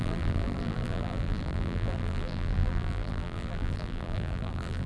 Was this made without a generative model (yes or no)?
no